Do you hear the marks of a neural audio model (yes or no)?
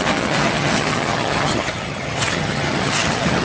yes